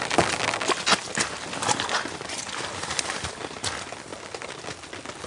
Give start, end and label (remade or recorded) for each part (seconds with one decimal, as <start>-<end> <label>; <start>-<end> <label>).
0.0-5.3 recorded